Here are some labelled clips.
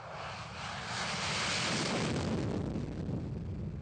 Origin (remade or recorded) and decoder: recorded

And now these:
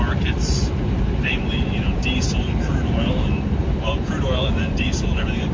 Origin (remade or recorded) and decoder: remade, vocoder, BigVGAN v2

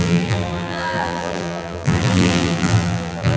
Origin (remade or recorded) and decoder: remade, vocoder, BigVGAN v2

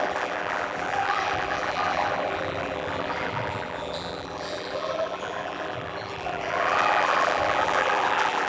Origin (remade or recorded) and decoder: remade, vocoder, BigVGAN v2